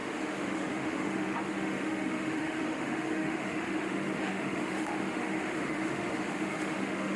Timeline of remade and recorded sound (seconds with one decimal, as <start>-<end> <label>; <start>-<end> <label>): 0.0-7.2 remade